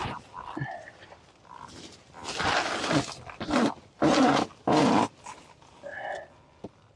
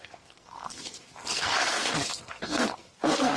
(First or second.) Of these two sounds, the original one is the first